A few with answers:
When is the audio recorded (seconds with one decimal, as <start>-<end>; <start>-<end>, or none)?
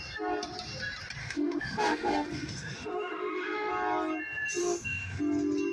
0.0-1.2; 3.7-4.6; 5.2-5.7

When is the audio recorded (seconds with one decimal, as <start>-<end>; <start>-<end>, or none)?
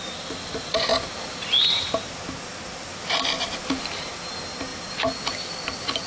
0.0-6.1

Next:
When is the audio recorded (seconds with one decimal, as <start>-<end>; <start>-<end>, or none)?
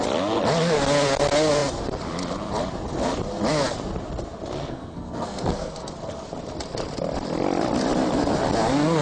0.0-4.6; 5.9-9.0